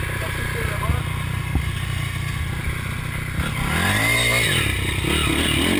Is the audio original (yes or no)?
yes